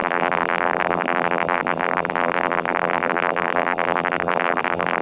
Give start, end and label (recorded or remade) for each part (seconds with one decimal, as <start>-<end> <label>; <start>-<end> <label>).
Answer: 0.0-5.0 remade